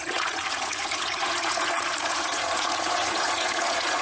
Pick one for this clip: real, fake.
fake